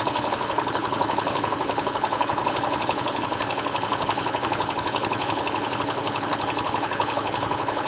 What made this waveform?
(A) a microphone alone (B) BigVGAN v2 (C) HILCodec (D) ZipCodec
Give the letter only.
C